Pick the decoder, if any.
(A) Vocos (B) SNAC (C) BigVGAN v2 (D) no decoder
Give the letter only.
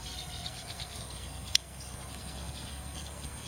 B